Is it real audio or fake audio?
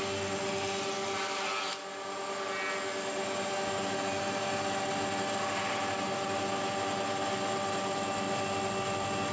real